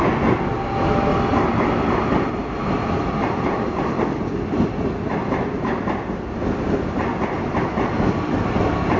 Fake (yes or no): no